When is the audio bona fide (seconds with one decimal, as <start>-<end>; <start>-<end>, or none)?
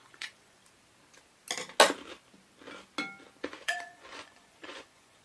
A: 0.6-3.4